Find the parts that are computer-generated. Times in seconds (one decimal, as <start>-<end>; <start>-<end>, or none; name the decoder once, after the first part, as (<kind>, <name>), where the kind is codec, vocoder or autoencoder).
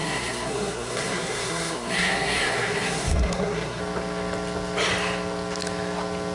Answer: 0.0-3.8 (codec, SNAC)